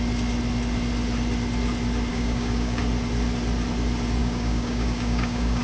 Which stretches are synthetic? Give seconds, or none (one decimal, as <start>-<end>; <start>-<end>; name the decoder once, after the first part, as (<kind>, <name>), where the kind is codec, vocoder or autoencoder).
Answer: 2.1-2.8 (codec, DAC); 4.2-5.6